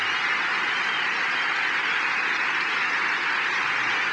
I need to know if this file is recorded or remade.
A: recorded